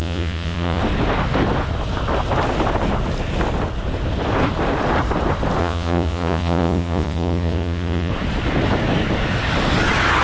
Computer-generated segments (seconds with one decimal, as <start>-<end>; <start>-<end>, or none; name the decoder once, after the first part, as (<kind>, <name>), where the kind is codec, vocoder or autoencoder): 0.0-0.8 (vocoder, Vocos); 5.6-8.1